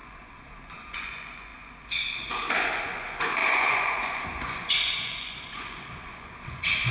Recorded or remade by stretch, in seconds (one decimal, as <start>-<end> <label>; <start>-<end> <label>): 0.0-6.9 remade